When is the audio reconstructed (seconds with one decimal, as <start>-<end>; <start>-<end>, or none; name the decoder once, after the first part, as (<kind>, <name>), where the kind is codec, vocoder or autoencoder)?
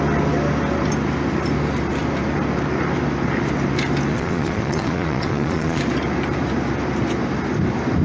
4.1-5.8 (vocoder, Vocos)